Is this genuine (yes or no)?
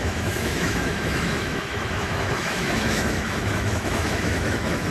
no